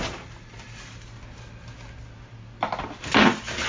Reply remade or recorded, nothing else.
recorded